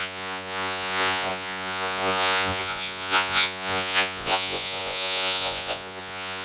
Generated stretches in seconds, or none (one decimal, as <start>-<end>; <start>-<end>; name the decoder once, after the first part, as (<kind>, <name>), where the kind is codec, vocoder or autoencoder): 0.0-6.4 (vocoder, Vocos)